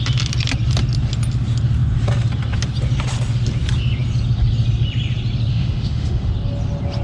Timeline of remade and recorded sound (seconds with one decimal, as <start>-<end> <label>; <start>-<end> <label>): 0.0-5.5 recorded; 5.5-6.3 remade; 6.3-7.0 recorded